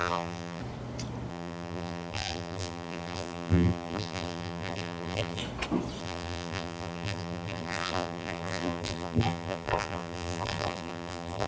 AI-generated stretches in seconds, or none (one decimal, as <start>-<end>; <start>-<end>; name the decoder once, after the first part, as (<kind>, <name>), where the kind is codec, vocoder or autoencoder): 0.0-0.6 (vocoder, BigVGAN v2); 1.3-5.4; 6.0-11.5